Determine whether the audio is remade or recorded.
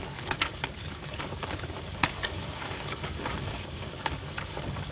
remade